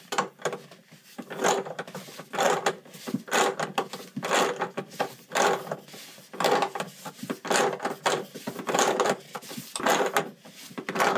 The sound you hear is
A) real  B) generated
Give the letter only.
A